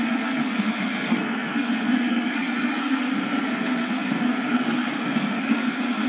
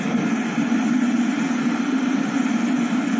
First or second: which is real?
second